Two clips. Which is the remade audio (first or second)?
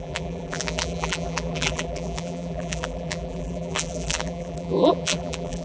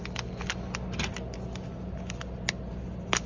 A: first